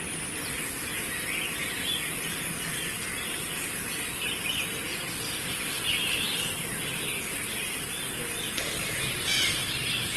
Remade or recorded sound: recorded